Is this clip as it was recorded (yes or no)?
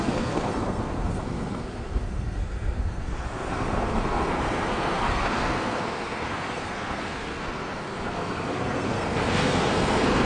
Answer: no